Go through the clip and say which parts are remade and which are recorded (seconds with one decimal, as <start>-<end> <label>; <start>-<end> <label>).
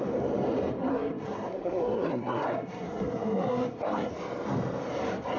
0.0-0.9 recorded; 0.9-4.1 remade; 4.1-5.4 recorded